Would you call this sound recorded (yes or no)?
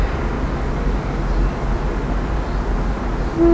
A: yes